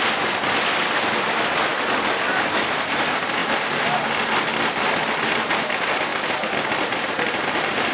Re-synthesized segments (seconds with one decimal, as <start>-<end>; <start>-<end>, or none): 1.7-2.7